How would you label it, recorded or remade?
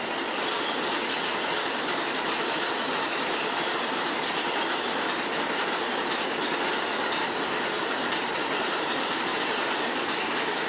recorded